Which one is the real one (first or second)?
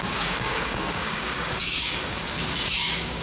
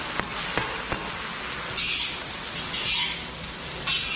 second